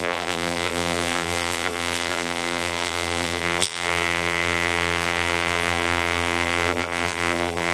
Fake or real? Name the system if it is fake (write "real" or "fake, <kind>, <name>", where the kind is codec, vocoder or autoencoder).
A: fake, vocoder, BigVGAN v2